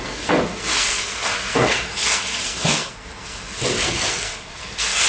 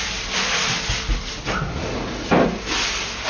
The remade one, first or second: first